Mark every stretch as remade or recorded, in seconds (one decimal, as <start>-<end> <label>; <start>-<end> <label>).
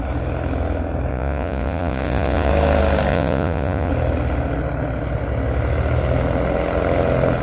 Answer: 0.0-1.1 recorded; 1.1-2.5 remade; 2.5-3.1 recorded; 3.1-3.9 remade; 3.9-7.4 recorded